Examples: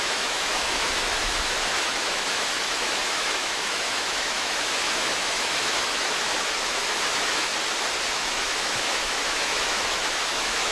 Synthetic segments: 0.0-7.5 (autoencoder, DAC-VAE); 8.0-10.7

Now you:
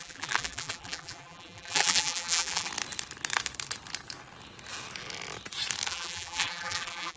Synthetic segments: 0.0-2.7 (vocoder, BigVGAN v2); 5.9-7.2

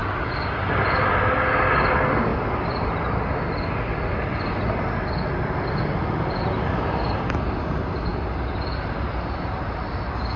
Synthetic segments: none

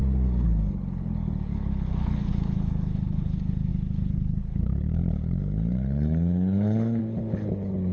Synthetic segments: 0.0-7.9 (codec, HILCodec)

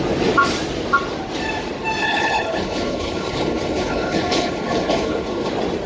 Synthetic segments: 2.0-5.5 (codec, HILCodec)

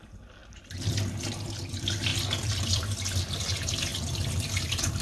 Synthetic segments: 0.0-5.0 (vocoder, BigVGAN v2)